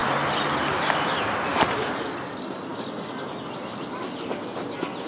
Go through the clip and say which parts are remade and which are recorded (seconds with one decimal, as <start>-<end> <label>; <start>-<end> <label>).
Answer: 0.0-0.5 remade; 0.5-1.5 recorded; 1.5-2.0 remade; 2.0-5.1 recorded